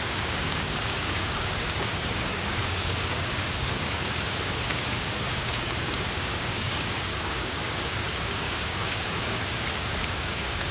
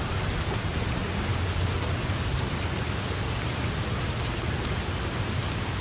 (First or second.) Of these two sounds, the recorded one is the second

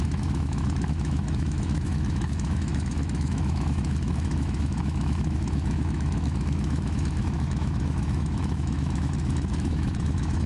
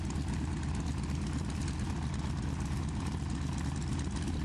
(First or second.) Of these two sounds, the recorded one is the second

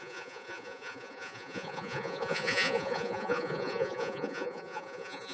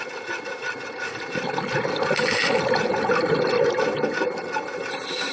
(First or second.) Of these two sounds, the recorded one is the second